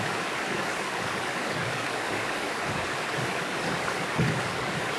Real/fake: fake